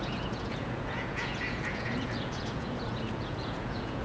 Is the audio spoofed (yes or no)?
yes